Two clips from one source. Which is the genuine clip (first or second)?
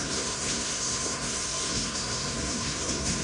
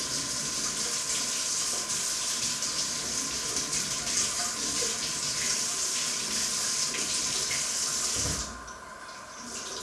second